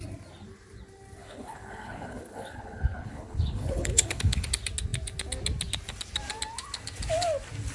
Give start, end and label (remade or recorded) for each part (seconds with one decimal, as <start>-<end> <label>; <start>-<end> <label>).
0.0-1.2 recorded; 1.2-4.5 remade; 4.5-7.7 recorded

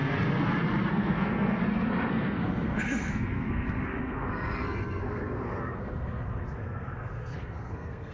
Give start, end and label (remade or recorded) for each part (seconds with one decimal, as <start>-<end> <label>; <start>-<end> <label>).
0.0-0.9 recorded; 0.9-1.6 remade; 1.6-2.1 recorded; 2.1-8.1 remade

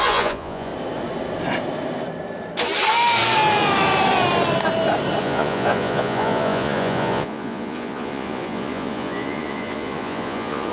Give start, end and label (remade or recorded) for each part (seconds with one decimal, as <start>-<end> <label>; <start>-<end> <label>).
0.0-0.7 remade; 0.7-5.2 recorded; 5.2-10.7 remade

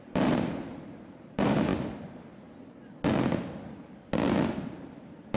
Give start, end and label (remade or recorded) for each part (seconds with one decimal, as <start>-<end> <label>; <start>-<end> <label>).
0.0-1.7 remade; 1.7-4.6 recorded; 4.6-5.4 remade

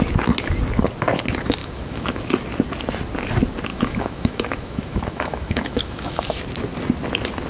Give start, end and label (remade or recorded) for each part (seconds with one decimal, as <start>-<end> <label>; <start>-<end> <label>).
0.0-1.6 recorded; 1.6-2.2 remade; 2.2-3.7 recorded; 3.7-6.4 remade; 6.4-7.5 recorded

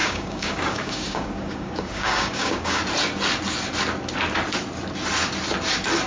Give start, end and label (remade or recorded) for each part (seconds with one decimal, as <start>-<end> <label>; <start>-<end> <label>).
0.0-2.8 remade; 2.8-6.1 recorded

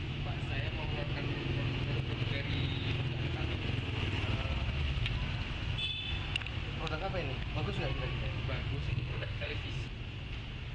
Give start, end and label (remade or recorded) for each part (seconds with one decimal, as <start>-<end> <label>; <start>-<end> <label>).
0.0-8.8 recorded; 8.8-9.5 remade; 9.5-10.7 recorded

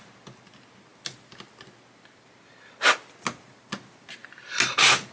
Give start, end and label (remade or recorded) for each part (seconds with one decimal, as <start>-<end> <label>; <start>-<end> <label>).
0.0-5.1 recorded